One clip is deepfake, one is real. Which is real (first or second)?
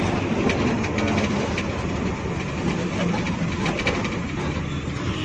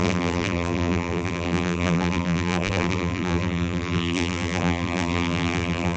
first